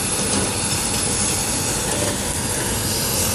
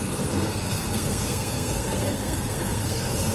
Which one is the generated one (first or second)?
second